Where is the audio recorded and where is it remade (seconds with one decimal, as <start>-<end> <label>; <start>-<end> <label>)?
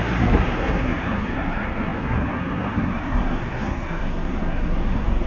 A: 0.0-5.3 remade